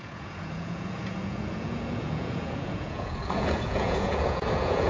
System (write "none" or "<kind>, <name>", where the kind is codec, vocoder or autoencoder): vocoder, Vocos